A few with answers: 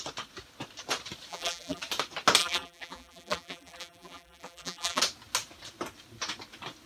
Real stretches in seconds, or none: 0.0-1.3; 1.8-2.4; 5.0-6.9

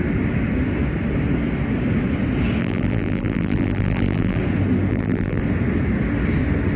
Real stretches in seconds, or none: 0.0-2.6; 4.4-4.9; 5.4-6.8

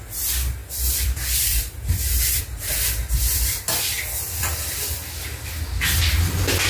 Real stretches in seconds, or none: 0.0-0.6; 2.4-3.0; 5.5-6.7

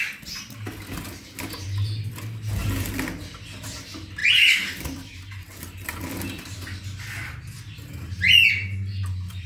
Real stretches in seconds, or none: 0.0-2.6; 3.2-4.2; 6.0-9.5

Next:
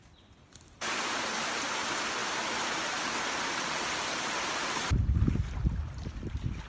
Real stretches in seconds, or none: 1.1-6.7

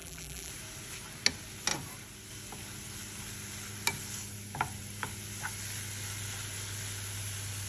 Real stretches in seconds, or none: 0.5-7.7

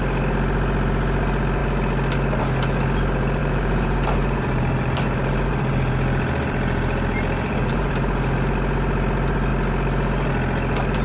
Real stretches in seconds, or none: 0.0-3.4; 7.9-11.0